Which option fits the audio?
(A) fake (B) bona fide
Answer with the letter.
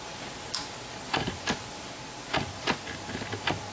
B